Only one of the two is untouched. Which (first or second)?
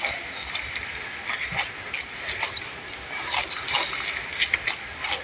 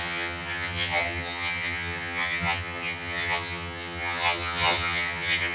first